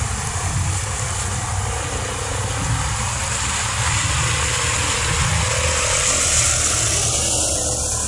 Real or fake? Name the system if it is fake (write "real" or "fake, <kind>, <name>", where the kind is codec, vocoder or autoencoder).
real